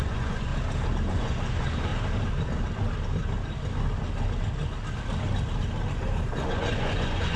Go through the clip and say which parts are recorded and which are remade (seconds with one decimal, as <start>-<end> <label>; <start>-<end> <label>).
0.0-0.5 remade; 0.5-1.1 recorded; 1.1-1.9 remade; 1.9-6.3 recorded; 6.3-7.4 remade

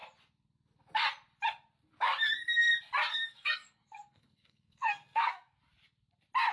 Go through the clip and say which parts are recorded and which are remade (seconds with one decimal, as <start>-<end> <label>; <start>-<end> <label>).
0.0-3.1 recorded; 3.1-5.6 remade; 5.6-6.5 recorded

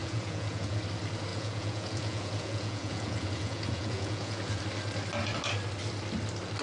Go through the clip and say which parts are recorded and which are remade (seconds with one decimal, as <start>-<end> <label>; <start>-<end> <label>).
0.0-0.8 remade; 0.8-1.3 recorded; 1.3-4.6 remade; 4.6-6.6 recorded

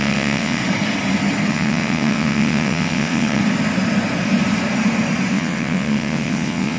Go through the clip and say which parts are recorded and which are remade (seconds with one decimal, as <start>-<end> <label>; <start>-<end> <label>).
0.0-0.6 remade; 0.6-1.5 recorded; 1.5-3.4 remade; 3.4-5.3 recorded; 5.3-6.8 remade

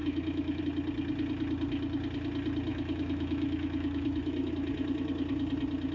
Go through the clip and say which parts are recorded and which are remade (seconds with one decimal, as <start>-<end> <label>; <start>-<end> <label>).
0.0-0.6 remade; 0.6-2.7 recorded; 2.7-4.5 remade; 4.5-5.9 recorded